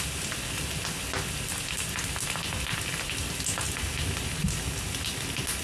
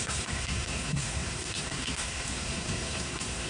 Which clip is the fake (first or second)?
second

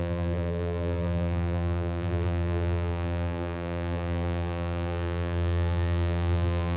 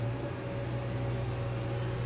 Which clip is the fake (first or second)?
first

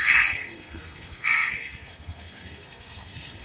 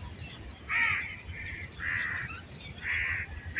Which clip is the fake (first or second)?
first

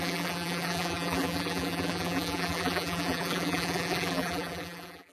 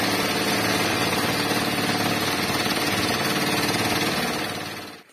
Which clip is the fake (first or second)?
first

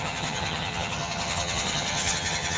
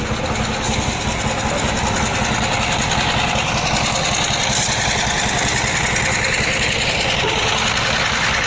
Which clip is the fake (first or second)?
first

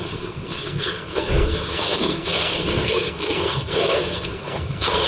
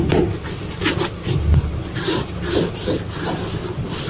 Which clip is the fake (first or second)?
first